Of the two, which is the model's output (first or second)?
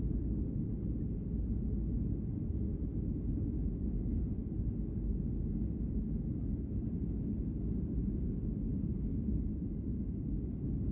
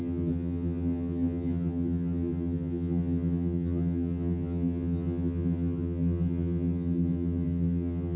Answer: second